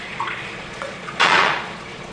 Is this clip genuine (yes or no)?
no